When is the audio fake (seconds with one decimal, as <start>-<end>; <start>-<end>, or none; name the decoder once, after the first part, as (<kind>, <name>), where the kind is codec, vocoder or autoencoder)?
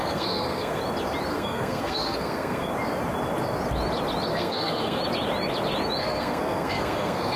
0.0-0.8 (codec, SNAC); 1.3-2.7; 4.3-5.0; 6.0-7.4